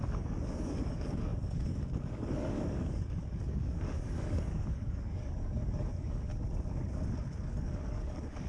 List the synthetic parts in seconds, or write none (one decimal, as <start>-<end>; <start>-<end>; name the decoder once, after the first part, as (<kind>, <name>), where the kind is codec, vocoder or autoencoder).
0.0-6.3 (codec, DAC); 7.4-8.5